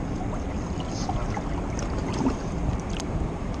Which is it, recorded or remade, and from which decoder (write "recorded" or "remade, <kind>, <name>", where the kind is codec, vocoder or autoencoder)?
recorded